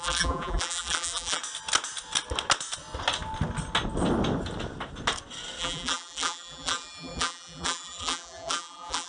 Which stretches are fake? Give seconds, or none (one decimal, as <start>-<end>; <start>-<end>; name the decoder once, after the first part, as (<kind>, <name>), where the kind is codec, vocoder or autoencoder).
0.0-1.4 (vocoder, BigVGAN v2); 5.6-9.1